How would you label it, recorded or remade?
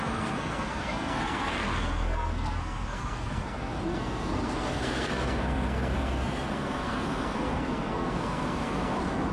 remade